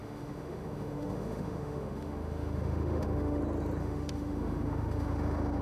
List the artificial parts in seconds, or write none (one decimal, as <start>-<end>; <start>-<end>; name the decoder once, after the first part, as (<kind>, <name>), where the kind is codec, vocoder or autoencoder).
0.0-3.4 (autoencoder, DAC-VAE); 3.8-5.6